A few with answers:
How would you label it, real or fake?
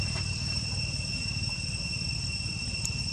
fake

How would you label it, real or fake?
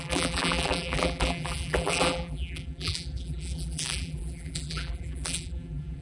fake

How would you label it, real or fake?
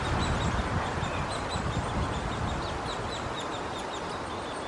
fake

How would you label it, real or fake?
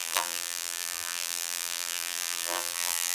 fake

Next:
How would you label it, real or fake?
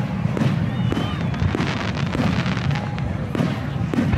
real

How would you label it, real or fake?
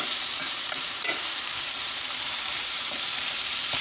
fake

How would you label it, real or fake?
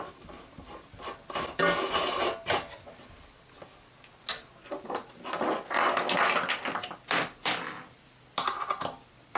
real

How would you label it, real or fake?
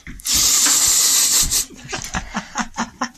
real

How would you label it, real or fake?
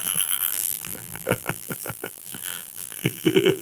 fake